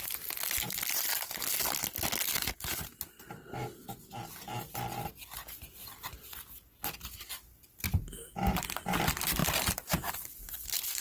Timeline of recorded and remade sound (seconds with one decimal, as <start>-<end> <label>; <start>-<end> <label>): 0.0-11.0 recorded